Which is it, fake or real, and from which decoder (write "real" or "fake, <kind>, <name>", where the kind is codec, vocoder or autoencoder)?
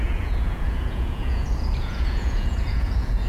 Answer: fake, vocoder, Vocos